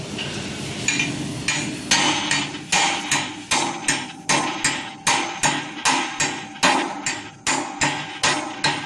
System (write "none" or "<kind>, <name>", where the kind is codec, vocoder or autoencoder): none